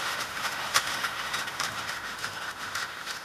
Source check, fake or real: fake